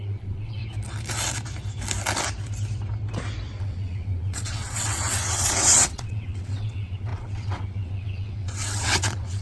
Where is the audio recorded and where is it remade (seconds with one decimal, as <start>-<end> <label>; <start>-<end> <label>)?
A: 0.0-0.6 remade; 0.6-3.6 recorded; 3.6-9.4 remade